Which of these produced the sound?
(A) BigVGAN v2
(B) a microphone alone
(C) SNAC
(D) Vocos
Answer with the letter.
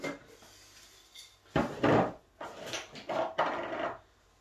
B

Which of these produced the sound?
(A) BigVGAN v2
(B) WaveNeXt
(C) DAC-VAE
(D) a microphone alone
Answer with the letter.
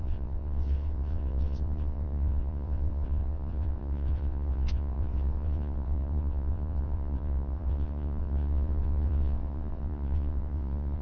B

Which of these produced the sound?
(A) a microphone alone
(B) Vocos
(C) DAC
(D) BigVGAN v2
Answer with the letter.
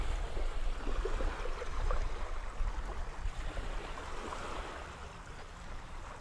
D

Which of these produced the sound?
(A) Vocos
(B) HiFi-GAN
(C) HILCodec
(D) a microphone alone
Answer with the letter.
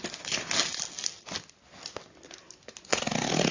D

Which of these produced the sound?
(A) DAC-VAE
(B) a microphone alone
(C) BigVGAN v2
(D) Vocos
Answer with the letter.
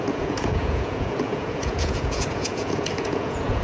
D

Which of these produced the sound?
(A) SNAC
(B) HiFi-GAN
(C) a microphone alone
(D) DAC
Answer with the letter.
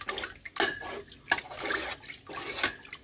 C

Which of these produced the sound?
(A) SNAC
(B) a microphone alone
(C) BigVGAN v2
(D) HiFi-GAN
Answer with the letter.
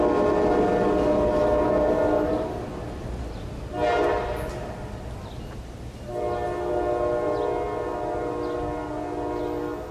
B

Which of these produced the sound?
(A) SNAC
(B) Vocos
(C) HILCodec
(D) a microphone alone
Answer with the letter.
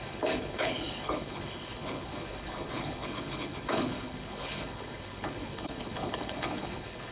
C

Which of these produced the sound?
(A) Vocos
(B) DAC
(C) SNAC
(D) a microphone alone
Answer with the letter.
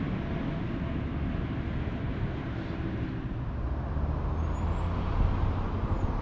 D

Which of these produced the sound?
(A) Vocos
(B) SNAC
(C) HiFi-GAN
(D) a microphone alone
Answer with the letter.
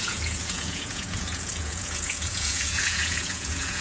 A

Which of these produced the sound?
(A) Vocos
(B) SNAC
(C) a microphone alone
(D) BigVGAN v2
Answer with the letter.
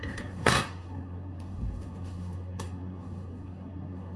B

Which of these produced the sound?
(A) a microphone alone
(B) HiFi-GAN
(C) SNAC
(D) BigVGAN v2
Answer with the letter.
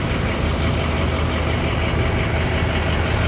A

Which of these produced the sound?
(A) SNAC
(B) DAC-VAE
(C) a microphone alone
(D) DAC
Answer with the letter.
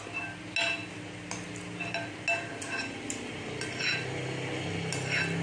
C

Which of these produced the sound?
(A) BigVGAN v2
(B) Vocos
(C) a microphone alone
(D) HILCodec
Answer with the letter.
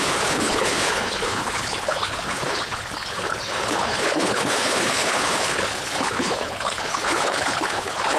D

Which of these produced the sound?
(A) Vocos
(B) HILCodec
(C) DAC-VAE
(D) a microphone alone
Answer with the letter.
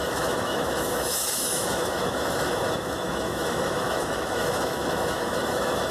C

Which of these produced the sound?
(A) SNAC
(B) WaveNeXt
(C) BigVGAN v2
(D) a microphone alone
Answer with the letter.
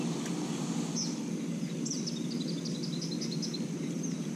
D